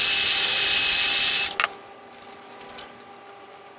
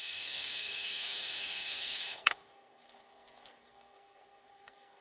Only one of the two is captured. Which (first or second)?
first